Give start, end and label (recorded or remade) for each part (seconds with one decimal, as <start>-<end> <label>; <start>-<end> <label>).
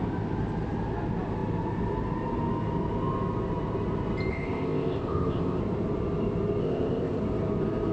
0.0-4.3 recorded; 4.3-5.6 remade; 5.6-6.6 recorded; 6.6-7.2 remade; 7.2-7.9 recorded